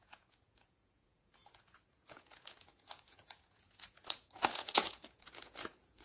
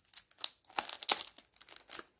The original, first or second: second